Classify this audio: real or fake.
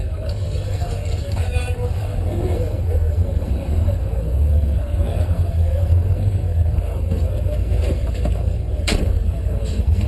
fake